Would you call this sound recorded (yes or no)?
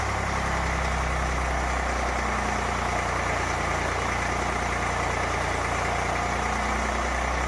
yes